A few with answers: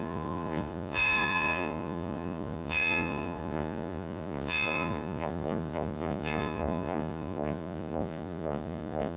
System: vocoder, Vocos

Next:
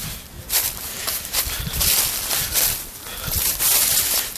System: vocoder, BigVGAN v2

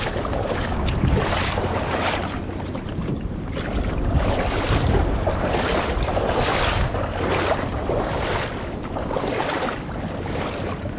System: none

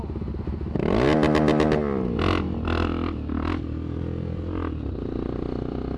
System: none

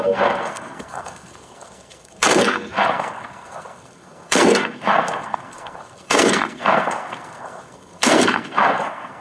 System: codec, SNAC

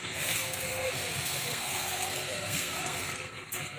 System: codec, SNAC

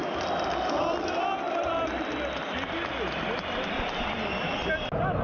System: none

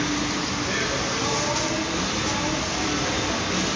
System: none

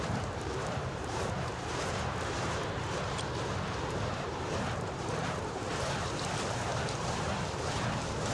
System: vocoder, BigVGAN v2